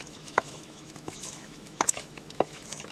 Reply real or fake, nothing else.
fake